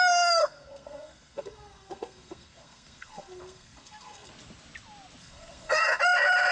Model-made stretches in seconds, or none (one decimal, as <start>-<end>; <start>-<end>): 0.4-4.3; 5.2-6.0